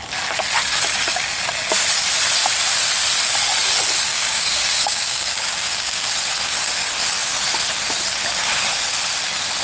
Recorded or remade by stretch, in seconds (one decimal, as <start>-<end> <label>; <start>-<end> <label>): 0.0-4.1 recorded; 4.1-6.1 remade; 6.1-9.6 recorded